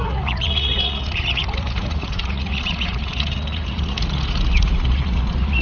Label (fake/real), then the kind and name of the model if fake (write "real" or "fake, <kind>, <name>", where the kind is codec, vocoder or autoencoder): fake, vocoder, Vocos